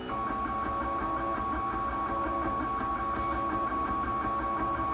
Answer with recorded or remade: recorded